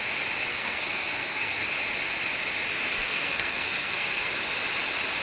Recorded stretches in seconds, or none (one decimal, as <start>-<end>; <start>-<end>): 0.0-0.5; 1.6-3.0; 4.3-5.2